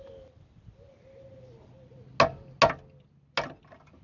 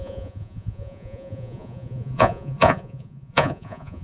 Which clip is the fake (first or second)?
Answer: second